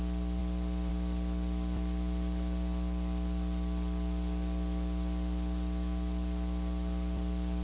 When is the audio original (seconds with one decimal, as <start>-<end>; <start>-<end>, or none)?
0.0-7.6